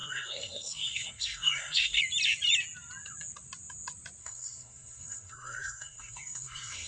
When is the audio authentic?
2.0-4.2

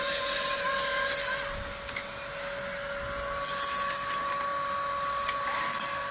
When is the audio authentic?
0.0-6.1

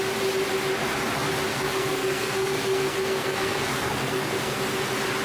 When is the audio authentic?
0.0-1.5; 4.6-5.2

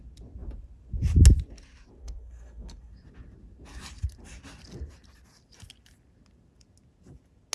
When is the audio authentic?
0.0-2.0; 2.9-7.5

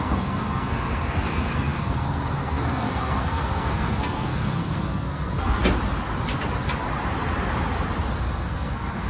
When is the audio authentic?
5.6-8.2